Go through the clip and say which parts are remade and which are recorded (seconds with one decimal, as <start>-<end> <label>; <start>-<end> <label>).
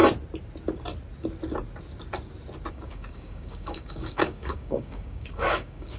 0.0-2.7 recorded; 2.7-6.0 remade